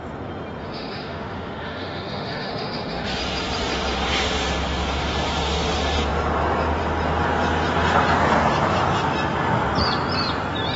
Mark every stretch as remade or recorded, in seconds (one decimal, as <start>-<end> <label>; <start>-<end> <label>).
0.0-0.6 recorded; 0.6-3.2 remade; 3.2-10.8 recorded